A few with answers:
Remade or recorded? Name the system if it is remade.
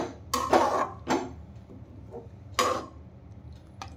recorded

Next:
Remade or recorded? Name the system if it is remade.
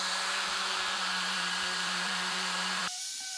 remade, vocoder, BigVGAN v2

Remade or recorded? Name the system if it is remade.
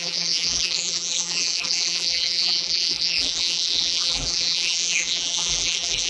remade, vocoder, BigVGAN v2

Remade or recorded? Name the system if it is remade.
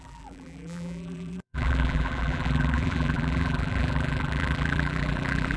remade, vocoder, BigVGAN v2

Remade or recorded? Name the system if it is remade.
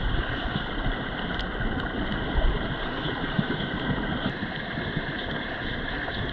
recorded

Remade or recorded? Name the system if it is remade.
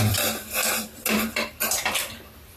remade, vocoder, BigVGAN v2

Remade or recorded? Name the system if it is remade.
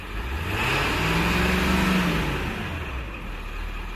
recorded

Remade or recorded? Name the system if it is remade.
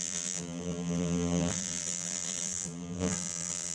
remade, vocoder, BigVGAN v2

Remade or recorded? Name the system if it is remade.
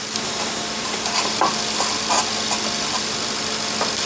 recorded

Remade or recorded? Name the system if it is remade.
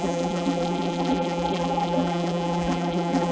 remade, vocoder, BigVGAN v2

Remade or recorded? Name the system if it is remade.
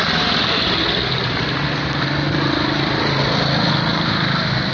recorded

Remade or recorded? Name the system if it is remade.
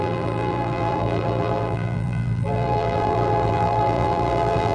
remade, vocoder, BigVGAN v2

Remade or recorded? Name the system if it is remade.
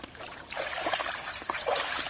remade, vocoder, BigVGAN v2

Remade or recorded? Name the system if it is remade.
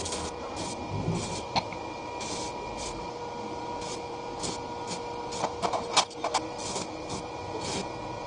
recorded